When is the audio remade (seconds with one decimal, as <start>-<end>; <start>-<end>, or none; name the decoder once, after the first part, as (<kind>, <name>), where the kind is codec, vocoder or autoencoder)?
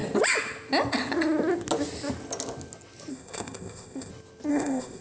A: 3.1-4.1 (codec, ZipCodec); 4.5-5.0